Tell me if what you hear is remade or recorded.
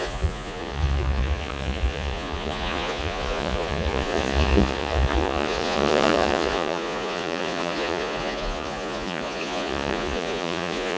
remade